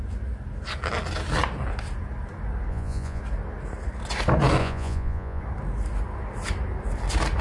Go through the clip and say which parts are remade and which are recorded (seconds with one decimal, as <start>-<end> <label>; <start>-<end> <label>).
0.0-2.7 recorded; 2.7-3.2 remade; 3.2-4.6 recorded; 4.6-5.4 remade; 5.4-7.4 recorded